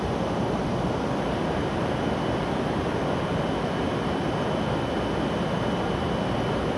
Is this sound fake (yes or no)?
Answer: no